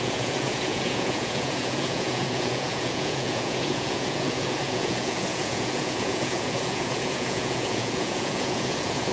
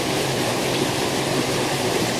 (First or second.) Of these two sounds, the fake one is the first